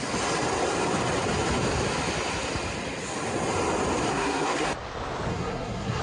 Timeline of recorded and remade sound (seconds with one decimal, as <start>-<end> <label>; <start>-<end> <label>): 0.0-4.1 recorded; 4.1-4.7 remade; 4.7-5.3 recorded; 5.3-6.0 remade